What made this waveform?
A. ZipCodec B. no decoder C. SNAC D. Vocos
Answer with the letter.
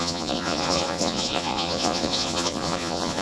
D